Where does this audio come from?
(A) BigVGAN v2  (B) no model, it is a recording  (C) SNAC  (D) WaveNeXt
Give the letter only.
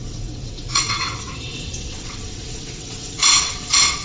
D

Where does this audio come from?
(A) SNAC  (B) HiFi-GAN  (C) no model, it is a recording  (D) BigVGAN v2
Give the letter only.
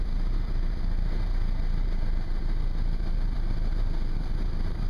D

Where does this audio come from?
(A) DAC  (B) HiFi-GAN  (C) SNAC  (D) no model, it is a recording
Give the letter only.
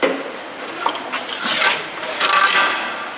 D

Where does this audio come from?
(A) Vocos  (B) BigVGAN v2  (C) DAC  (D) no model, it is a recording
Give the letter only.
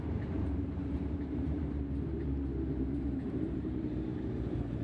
B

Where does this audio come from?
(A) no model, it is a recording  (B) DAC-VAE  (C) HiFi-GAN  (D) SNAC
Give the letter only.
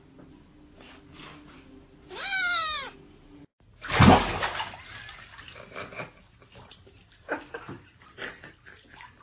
A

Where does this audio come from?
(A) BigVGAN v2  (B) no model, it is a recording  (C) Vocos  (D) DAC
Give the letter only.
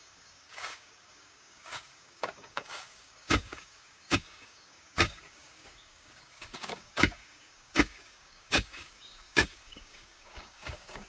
D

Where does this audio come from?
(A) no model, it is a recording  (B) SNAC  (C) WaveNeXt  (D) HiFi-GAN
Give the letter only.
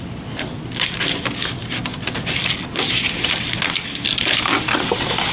A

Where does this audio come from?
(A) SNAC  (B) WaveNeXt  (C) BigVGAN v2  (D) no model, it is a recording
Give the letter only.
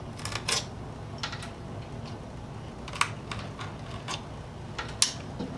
D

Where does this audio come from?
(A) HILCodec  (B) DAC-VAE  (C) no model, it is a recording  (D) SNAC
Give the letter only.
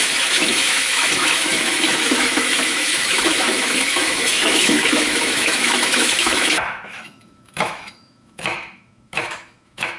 B